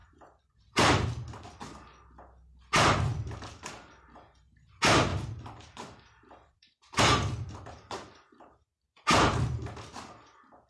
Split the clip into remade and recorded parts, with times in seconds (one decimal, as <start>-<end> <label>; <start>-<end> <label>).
0.0-1.1 remade; 1.1-3.1 recorded; 3.1-3.7 remade; 3.7-5.1 recorded; 5.1-9.0 remade; 9.0-10.7 recorded